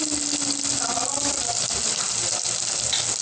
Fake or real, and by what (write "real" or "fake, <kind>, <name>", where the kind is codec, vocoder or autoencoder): real